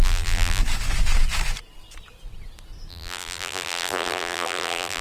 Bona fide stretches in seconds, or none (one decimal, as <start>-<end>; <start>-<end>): 0.6-2.9